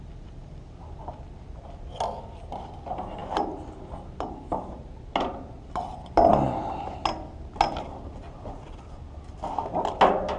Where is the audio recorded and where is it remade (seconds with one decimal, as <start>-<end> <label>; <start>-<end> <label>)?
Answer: 0.0-10.4 recorded